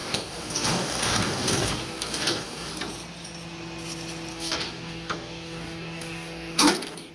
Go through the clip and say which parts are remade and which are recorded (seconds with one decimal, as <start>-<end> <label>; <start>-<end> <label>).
0.0-2.7 remade; 2.7-4.3 recorded; 4.3-7.1 remade